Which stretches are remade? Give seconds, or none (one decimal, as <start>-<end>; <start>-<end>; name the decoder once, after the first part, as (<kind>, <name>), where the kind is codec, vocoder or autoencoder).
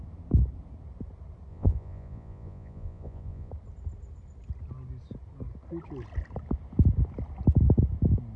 1.5-3.5 (vocoder, Vocos)